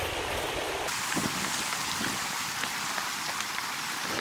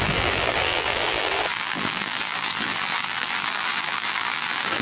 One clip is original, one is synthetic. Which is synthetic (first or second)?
second